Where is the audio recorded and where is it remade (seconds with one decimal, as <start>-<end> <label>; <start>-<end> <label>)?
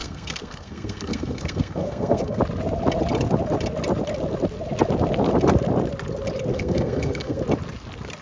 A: 0.0-2.4 remade; 2.4-6.5 recorded; 6.5-7.4 remade; 7.4-8.2 recorded